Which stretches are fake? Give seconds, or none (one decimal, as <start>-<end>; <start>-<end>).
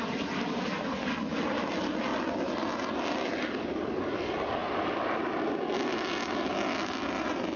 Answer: none